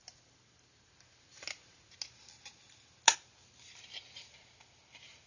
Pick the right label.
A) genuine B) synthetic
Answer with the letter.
A